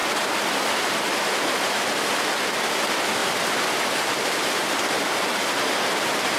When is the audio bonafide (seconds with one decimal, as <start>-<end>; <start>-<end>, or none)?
0.0-6.4